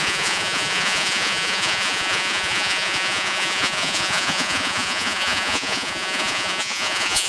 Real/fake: fake